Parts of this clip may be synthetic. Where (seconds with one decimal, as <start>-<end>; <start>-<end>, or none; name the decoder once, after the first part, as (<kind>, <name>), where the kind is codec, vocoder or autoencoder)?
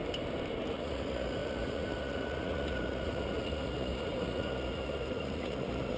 0.6-6.0 (vocoder, Vocos)